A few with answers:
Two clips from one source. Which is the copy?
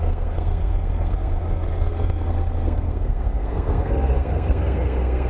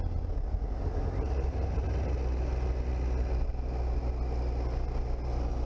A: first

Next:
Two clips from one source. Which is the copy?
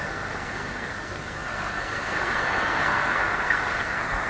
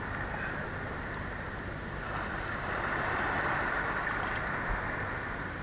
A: first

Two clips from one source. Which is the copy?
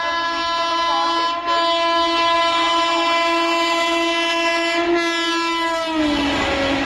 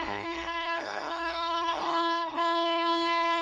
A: second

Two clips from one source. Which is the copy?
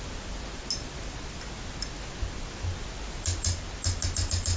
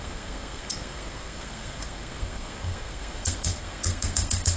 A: second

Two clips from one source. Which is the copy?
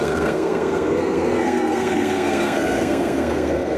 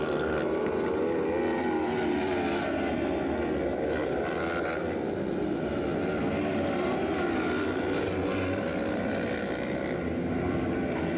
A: first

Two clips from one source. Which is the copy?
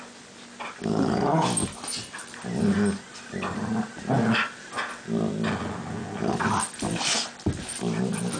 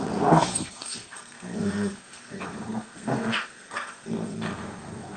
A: second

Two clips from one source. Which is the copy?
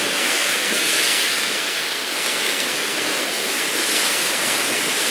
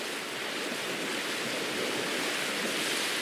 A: first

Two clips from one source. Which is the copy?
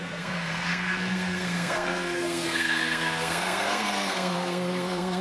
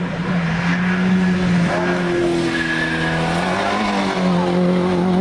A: first